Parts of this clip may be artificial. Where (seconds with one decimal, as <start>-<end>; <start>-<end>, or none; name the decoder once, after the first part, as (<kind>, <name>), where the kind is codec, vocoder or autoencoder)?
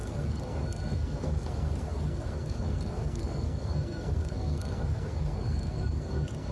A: 0.0-6.5 (codec, SNAC)